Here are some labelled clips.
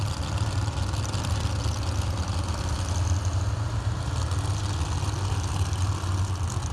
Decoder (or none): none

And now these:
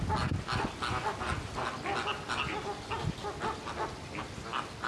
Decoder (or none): none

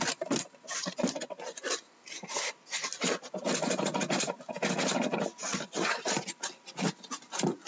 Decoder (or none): none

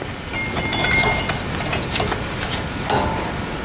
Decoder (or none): none